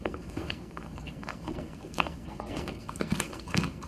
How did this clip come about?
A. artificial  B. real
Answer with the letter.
A